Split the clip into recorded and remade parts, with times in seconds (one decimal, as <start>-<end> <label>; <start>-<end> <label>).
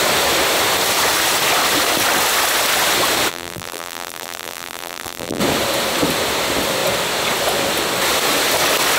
0.0-3.3 recorded; 3.3-5.4 remade; 5.4-9.0 recorded